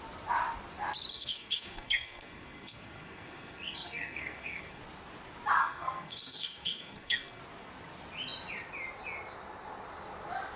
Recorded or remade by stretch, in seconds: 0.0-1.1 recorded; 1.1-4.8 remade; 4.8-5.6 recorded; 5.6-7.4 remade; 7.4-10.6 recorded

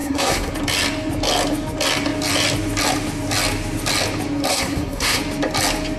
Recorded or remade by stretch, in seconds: 0.0-0.5 remade; 0.5-4.5 recorded; 4.5-5.2 remade; 5.2-6.0 recorded

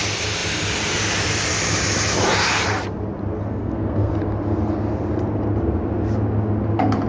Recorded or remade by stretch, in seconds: 0.0-3.5 recorded; 3.5-4.1 remade; 4.1-7.1 recorded

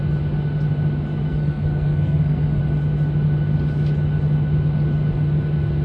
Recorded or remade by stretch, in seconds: 0.0-1.3 recorded; 1.3-2.6 remade; 2.6-5.8 recorded

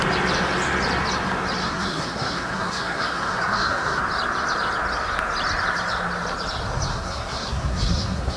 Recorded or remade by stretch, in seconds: 0.0-1.6 recorded; 1.6-4.0 remade; 4.0-6.9 recorded; 6.9-8.4 remade